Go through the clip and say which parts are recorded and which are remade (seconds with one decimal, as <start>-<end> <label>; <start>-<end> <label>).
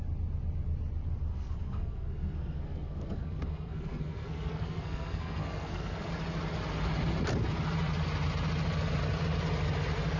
0.0-1.3 recorded; 1.3-6.1 remade; 6.1-10.2 recorded